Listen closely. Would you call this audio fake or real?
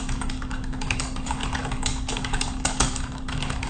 fake